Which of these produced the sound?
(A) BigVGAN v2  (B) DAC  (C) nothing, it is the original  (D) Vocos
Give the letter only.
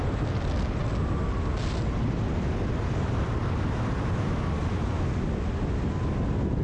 C